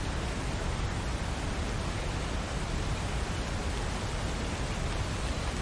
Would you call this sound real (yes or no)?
yes